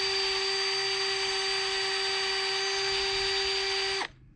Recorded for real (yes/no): yes